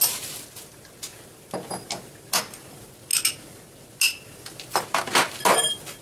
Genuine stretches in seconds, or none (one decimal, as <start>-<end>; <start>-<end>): 0.0-6.0